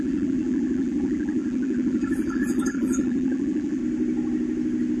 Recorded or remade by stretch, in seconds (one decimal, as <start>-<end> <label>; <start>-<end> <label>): 0.0-3.8 remade; 3.8-5.0 recorded